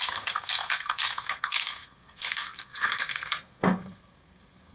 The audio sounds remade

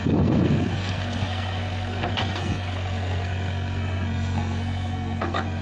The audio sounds remade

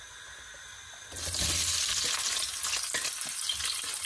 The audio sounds recorded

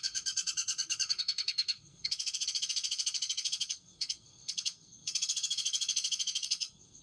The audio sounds remade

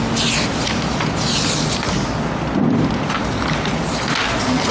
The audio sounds recorded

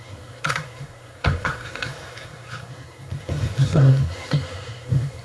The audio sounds remade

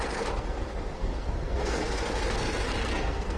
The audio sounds remade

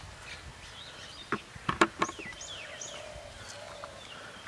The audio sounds recorded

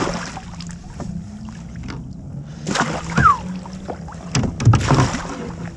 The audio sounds recorded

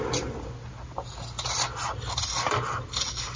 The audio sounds recorded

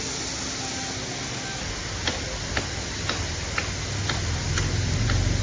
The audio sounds recorded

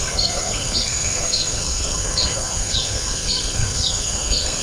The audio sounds remade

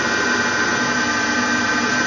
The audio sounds recorded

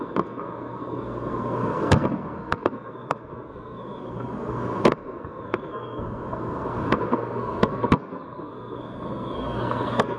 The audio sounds remade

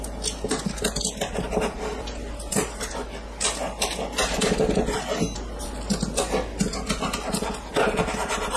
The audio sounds recorded